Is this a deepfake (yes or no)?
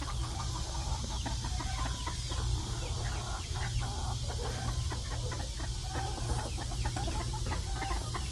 no